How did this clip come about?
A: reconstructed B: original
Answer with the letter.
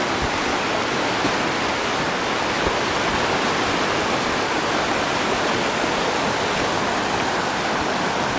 B